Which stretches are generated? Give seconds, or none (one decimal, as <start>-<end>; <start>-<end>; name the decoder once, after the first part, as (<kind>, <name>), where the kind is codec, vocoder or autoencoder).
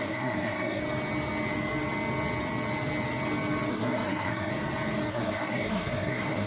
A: 0.0-0.8 (codec, SNAC); 3.7-4.5; 5.1-6.5